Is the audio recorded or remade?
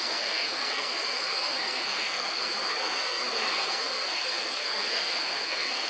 remade